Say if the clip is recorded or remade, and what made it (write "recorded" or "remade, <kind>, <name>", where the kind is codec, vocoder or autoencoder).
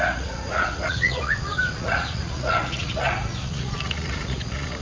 remade, vocoder, Vocos